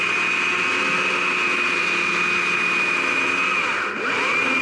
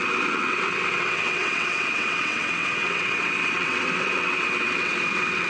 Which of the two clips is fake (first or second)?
second